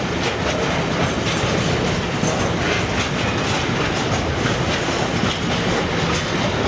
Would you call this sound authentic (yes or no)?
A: yes